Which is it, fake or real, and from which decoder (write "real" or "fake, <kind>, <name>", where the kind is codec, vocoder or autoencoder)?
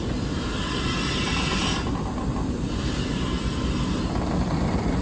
real